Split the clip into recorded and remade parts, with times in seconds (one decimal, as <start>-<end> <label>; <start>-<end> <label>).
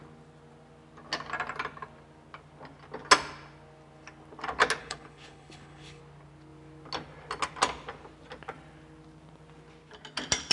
0.0-4.8 recorded; 4.8-6.0 remade; 6.0-10.5 recorded